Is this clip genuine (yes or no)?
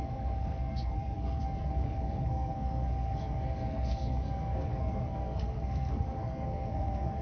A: no